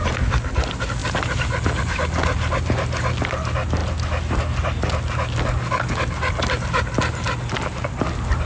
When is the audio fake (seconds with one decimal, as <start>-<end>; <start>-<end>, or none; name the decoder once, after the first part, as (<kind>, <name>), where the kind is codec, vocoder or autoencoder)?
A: none